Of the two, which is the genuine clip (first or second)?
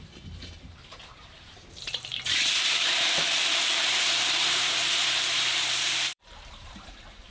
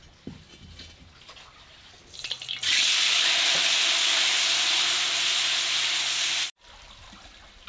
second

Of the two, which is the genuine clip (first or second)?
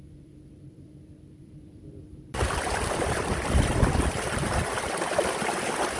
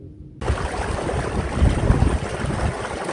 second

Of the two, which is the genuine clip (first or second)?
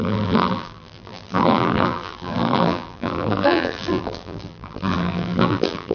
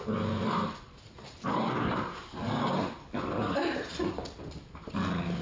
second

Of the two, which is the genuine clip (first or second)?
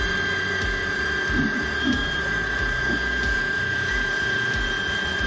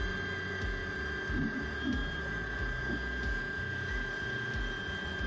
second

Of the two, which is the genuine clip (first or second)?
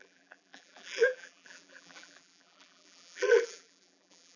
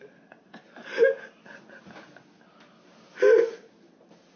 second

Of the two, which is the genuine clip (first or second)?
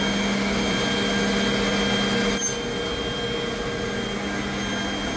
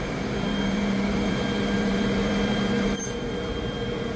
first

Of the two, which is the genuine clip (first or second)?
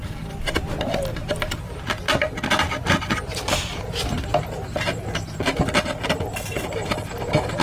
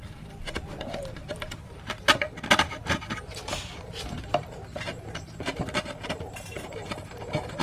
first